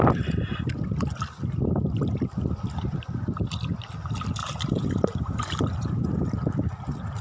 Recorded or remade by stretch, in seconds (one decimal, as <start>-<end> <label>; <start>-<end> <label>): 0.0-4.4 recorded; 4.4-5.9 remade; 5.9-7.2 recorded